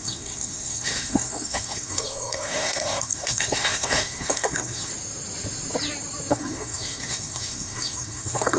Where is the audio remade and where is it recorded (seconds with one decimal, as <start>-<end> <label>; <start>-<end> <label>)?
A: 0.0-4.9 remade; 4.9-6.3 recorded; 6.3-8.6 remade